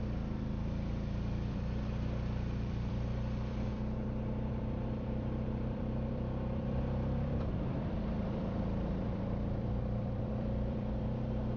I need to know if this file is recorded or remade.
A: remade